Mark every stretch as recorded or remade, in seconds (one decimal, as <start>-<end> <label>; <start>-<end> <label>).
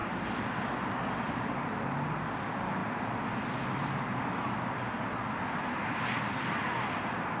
0.0-7.4 recorded